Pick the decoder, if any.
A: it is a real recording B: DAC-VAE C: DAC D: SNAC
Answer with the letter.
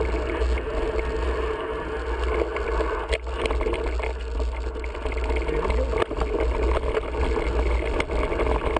A